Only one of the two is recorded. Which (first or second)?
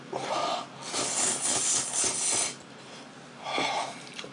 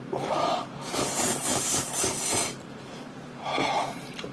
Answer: first